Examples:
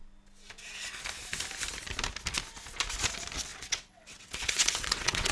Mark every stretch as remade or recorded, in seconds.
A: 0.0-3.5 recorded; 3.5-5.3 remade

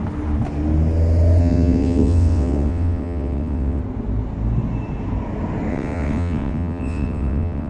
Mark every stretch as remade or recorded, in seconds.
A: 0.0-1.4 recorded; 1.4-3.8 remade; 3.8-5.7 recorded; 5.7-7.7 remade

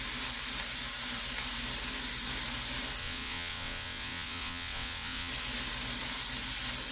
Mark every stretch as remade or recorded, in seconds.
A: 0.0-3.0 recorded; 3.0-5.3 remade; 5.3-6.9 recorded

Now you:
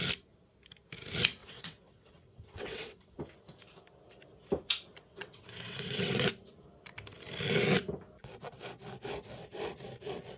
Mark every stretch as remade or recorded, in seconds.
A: 0.0-1.4 recorded; 1.4-3.2 remade; 3.2-5.0 recorded; 5.0-6.3 remade; 6.3-10.4 recorded